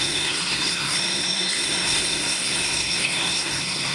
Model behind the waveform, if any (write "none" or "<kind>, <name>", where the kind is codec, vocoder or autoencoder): codec, SNAC